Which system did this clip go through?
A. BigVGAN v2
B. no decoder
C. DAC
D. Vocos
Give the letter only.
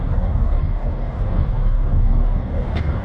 C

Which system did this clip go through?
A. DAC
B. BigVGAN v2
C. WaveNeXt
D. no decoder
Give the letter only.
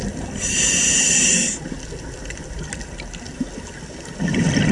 D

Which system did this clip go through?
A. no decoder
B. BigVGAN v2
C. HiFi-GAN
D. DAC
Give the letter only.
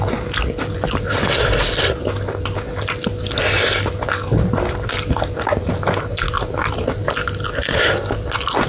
A